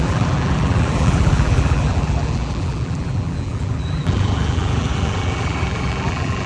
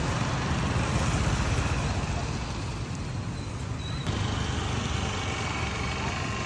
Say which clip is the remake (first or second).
first